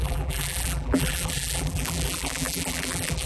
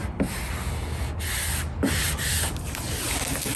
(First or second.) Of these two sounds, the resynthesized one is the first